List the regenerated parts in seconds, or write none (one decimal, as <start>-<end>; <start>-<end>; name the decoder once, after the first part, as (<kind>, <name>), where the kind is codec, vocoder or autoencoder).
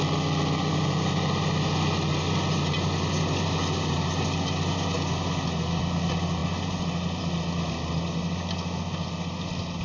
none